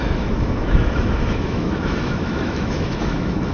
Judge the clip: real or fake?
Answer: fake